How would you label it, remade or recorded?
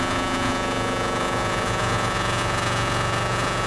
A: remade